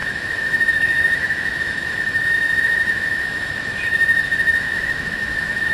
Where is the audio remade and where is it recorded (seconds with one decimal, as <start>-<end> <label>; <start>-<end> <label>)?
0.0-5.7 remade